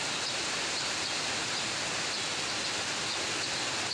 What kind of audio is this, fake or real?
real